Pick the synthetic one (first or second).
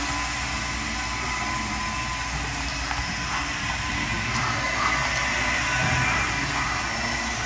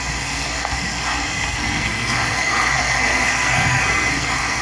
second